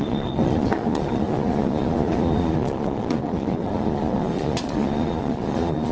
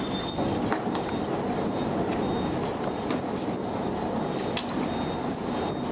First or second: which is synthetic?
first